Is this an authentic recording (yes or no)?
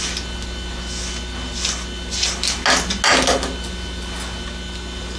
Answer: yes